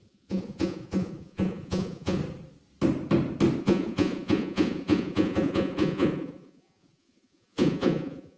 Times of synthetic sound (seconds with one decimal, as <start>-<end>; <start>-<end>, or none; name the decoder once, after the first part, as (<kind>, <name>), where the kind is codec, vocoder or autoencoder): 0.0-2.2 (vocoder, Vocos); 3.6-8.4